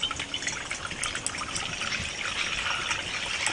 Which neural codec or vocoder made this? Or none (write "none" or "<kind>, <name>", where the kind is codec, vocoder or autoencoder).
none